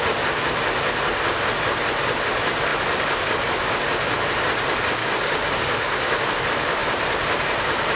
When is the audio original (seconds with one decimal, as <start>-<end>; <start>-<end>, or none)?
0.0-5.0; 6.2-7.9